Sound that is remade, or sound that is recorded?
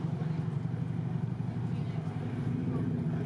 recorded